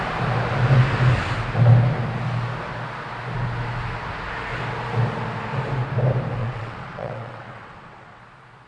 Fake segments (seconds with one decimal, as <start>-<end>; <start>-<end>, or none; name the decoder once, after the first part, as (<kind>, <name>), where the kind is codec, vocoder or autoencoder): 6.4-8.2 (vocoder, WaveNeXt)